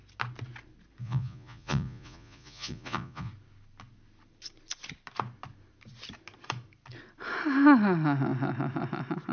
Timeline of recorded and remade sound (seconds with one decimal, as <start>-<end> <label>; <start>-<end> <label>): 0.0-1.0 recorded; 1.0-3.3 remade; 3.3-9.3 recorded